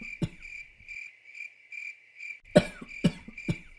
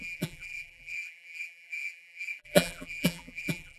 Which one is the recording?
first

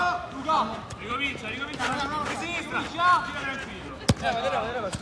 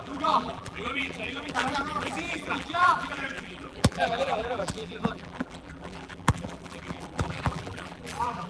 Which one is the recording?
first